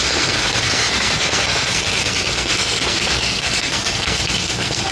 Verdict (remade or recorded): remade